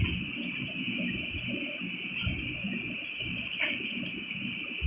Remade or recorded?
recorded